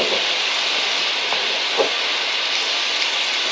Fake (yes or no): no